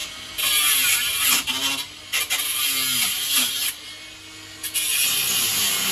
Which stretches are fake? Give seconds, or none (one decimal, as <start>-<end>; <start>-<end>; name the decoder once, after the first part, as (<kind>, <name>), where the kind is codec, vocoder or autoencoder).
none